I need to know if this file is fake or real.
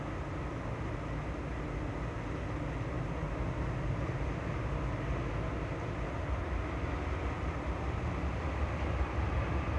real